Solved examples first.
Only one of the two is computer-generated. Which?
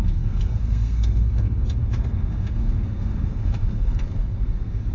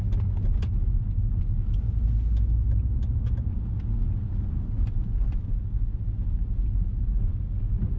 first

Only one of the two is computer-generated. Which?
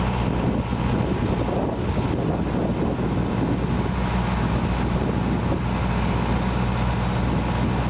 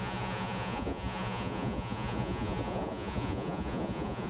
second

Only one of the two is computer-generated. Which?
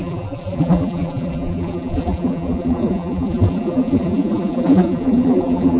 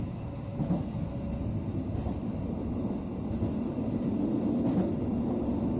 first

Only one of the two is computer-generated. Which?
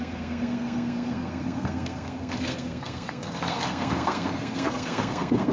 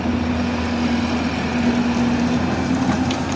first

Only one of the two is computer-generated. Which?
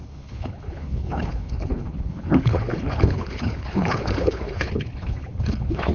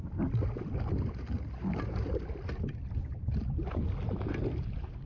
first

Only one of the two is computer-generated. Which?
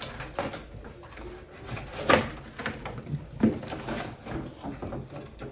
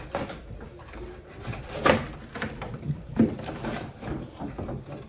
second